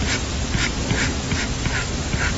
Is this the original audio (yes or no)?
yes